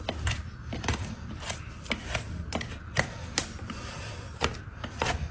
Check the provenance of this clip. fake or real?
real